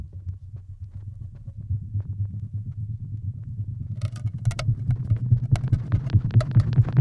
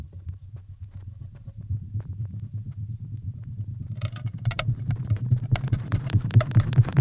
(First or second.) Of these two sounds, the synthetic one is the second